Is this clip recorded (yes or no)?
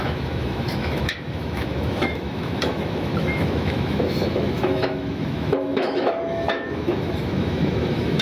no